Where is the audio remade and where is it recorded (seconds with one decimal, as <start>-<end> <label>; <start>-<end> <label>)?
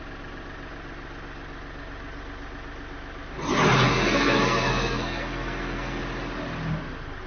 0.0-3.9 recorded; 3.9-6.0 remade; 6.0-7.3 recorded